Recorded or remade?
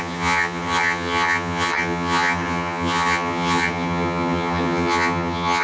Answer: remade